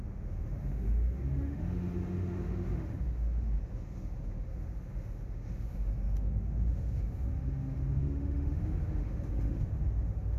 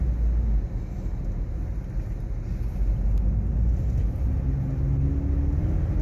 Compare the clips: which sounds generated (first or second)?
first